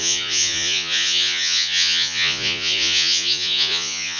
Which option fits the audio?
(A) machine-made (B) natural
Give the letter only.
A